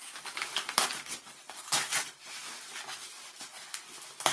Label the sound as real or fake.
real